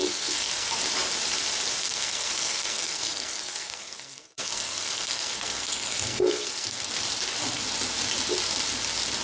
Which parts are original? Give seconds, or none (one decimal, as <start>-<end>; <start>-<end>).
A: 0.8-1.8; 6.9-9.2